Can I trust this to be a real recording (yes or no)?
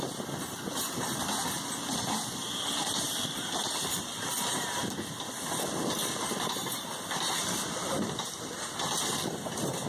yes